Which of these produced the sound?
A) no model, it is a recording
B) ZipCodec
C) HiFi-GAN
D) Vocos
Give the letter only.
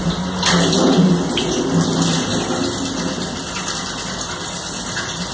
A